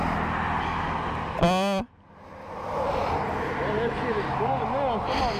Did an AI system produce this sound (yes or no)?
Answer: no